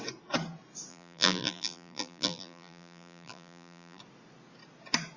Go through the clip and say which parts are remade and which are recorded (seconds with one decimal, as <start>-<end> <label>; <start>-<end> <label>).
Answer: 0.0-0.9 recorded; 0.9-4.0 remade; 4.0-5.2 recorded